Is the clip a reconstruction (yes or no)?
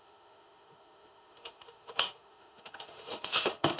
yes